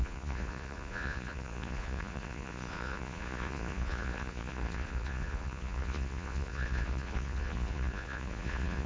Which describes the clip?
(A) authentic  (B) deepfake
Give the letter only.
B